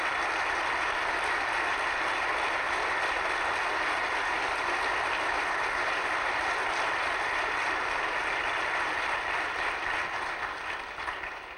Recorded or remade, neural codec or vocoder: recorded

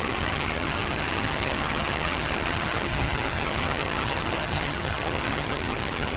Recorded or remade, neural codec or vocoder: remade, vocoder, HiFi-GAN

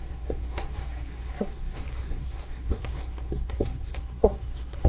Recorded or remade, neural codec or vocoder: remade, codec, SNAC